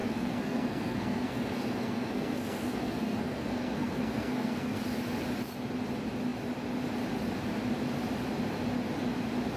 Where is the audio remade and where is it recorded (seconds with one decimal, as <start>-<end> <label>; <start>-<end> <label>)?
0.0-4.8 remade; 4.8-9.6 recorded